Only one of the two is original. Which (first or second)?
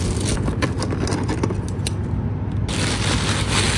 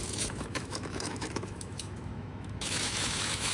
first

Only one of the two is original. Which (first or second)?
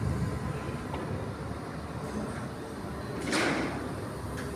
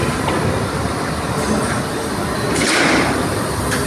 first